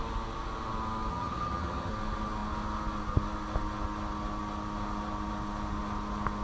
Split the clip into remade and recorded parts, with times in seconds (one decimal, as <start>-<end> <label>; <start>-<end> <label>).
0.0-1.1 recorded; 1.1-1.9 remade; 1.9-6.4 recorded